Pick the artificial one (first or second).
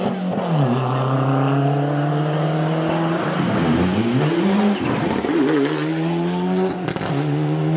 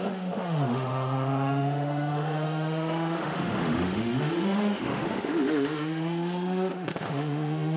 second